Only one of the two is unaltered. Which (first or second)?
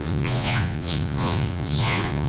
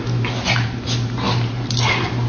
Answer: second